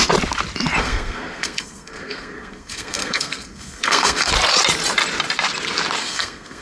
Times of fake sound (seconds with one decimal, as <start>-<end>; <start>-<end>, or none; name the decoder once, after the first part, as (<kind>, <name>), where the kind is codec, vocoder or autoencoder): 0.8-4.3 (codec, SNAC); 6.0-6.6

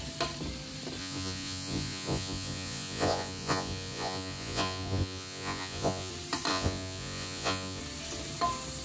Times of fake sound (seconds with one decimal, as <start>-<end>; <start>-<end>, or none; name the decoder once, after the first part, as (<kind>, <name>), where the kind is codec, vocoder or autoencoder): 1.0-6.1 (vocoder, Vocos); 6.5-7.8